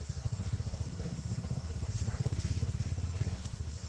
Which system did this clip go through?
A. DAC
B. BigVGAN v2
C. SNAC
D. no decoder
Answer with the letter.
C